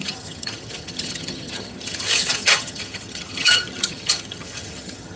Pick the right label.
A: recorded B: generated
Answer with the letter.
B